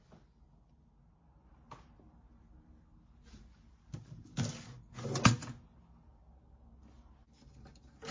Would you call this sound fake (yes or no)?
no